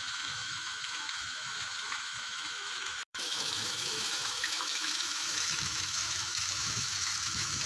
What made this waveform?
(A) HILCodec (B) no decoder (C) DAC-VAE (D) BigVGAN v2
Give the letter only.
C